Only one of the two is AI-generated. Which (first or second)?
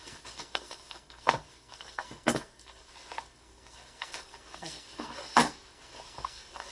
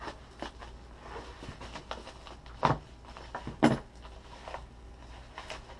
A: first